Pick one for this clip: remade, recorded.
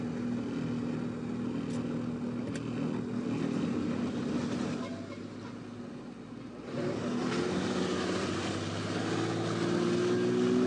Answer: recorded